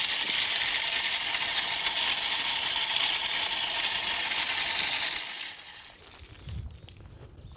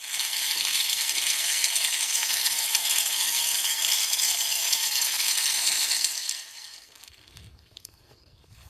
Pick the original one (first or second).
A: first